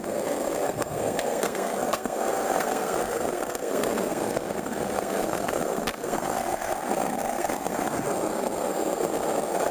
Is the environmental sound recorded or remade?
remade